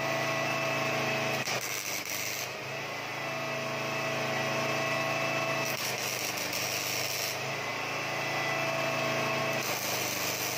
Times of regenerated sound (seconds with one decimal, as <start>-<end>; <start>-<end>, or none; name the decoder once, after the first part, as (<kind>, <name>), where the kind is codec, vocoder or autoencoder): none